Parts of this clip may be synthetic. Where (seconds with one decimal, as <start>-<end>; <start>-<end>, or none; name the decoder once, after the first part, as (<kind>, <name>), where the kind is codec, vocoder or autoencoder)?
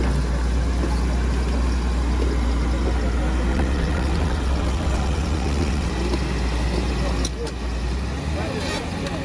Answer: 3.5-5.9 (vocoder, WaveNeXt)